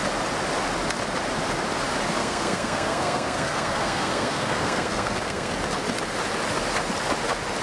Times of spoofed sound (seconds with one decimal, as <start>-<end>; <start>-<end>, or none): 2.2-5.5